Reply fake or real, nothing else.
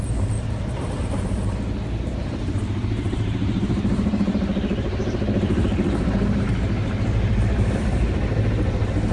fake